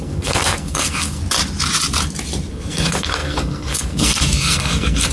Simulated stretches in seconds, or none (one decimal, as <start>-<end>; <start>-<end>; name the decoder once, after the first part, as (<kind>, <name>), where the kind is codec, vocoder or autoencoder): 0.0-1.2 (codec, SNAC); 2.5-5.1